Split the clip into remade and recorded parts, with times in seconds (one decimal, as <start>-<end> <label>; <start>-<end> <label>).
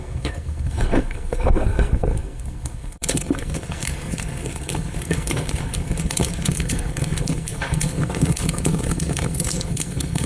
0.0-10.3 remade